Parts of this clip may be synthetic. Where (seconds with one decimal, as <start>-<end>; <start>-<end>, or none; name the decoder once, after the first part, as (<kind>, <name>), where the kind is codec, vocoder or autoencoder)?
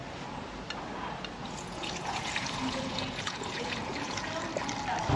1.4-4.3 (vocoder, Vocos)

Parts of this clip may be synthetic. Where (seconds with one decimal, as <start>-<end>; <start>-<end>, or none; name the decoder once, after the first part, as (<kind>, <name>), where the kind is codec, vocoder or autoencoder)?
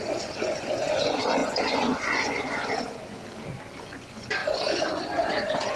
0.0-3.2 (vocoder, Vocos); 3.8-5.8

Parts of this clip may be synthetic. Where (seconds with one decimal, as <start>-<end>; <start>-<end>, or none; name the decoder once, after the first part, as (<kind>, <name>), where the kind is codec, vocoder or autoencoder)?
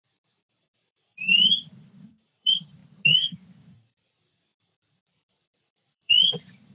0.0-2.8 (vocoder, BigVGAN v2); 3.6-6.7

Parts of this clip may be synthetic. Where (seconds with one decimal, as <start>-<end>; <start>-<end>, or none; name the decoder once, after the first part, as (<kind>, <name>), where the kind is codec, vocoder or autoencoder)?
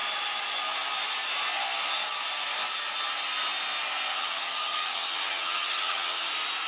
4.1-6.3 (vocoder, HiFi-GAN)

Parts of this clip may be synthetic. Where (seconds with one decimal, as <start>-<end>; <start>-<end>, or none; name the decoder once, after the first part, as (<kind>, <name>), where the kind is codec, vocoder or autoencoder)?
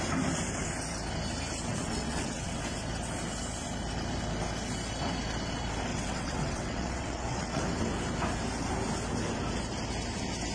1.7-2.6 (vocoder, WaveNeXt); 5.9-7.6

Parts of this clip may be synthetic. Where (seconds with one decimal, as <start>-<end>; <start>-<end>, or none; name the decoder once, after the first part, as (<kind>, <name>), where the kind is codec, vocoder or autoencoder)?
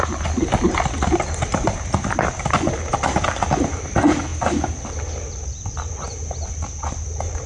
none